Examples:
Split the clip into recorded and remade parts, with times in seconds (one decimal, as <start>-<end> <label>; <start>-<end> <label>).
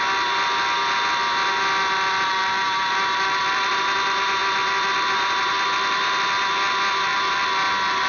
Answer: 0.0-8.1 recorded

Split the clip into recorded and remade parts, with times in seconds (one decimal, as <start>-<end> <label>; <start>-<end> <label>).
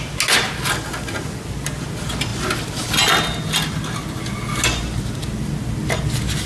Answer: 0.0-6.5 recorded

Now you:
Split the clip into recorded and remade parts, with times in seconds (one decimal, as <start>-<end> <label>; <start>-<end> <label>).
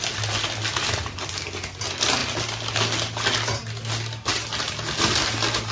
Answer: 0.0-5.7 recorded